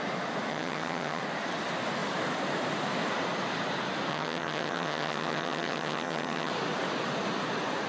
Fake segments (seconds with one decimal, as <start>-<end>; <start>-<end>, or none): 0.5-1.2; 4.1-6.5